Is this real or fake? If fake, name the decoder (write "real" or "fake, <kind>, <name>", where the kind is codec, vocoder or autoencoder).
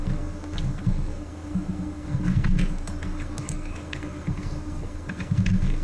fake, codec, SNAC